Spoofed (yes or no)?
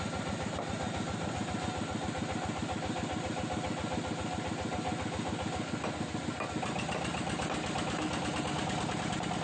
no